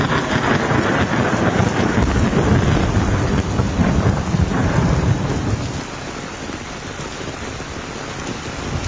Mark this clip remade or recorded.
recorded